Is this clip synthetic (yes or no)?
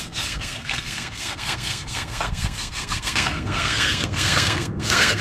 yes